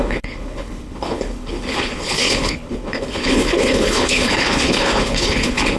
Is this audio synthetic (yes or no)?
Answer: yes